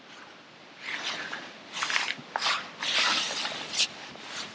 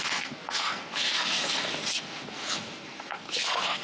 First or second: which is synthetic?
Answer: second